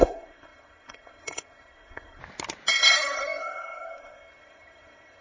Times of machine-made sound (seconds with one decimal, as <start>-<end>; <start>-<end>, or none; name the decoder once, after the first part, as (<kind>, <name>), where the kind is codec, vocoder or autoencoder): 0.0-2.2 (codec, SNAC); 2.7-5.2